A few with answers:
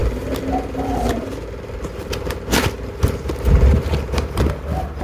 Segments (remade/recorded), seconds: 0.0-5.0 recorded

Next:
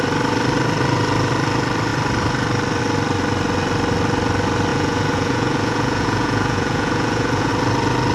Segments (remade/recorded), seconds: 0.0-4.7 recorded; 4.7-7.5 remade; 7.5-8.1 recorded

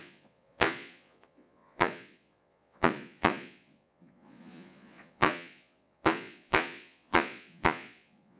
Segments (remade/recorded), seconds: 0.0-8.4 remade

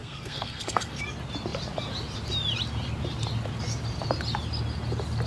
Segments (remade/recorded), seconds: 0.0-1.0 remade; 1.0-5.3 recorded

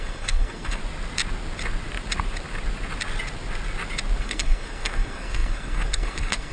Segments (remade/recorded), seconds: 0.0-0.8 remade; 0.8-4.2 recorded; 4.2-6.5 remade